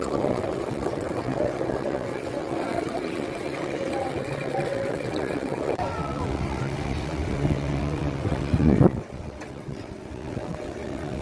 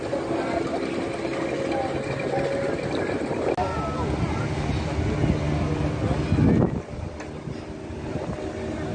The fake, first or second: first